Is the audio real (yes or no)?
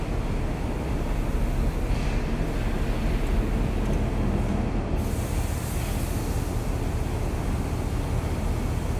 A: yes